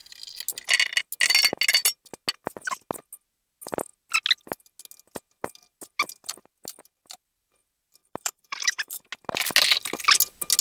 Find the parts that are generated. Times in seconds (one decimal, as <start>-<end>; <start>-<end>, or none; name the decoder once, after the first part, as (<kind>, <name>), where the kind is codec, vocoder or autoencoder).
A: 8.0-9.0 (vocoder, BigVGAN v2)